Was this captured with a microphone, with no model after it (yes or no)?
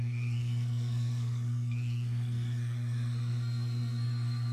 no